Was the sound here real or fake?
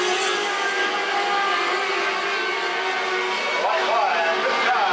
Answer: real